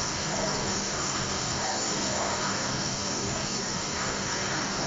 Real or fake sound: fake